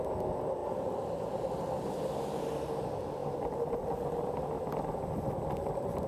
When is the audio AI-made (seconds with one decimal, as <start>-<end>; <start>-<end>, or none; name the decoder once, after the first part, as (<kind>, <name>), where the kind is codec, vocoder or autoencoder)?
none